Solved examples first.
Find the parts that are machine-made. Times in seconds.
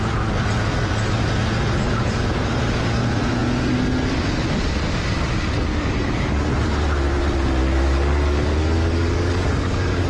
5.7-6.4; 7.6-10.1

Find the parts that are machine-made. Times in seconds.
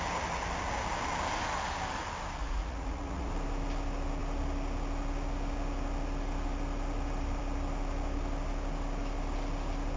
2.4-3.3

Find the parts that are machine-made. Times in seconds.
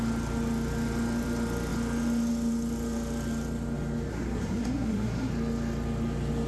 4.1-5.3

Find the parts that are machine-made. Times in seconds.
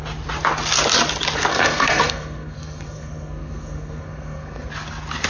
1.5-4.7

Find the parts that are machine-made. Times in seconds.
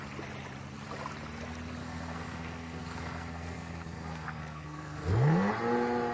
1.8-5.5